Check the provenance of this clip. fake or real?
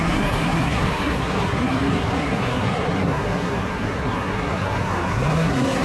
fake